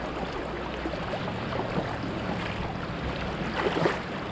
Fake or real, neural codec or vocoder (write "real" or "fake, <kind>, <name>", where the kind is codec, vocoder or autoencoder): real